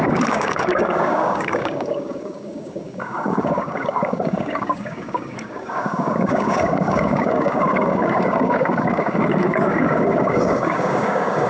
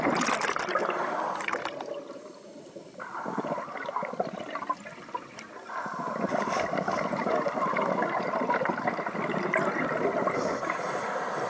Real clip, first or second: second